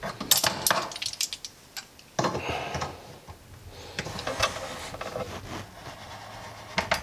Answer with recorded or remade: recorded